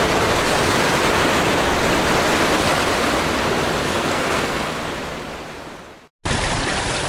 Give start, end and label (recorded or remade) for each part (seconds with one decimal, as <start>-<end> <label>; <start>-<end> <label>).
0.0-3.8 recorded; 3.8-4.8 remade; 4.8-7.1 recorded